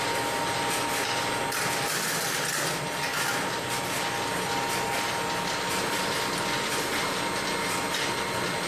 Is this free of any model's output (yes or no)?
yes